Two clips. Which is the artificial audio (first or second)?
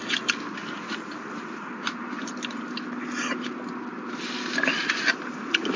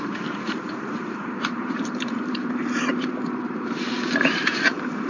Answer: second